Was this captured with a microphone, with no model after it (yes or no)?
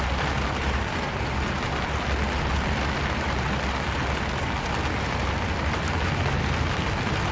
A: yes